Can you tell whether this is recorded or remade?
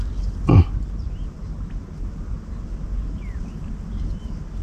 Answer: recorded